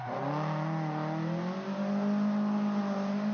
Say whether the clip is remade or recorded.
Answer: recorded